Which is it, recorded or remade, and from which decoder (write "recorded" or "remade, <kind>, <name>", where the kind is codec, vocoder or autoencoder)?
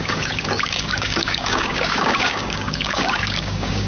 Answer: remade, codec, DAC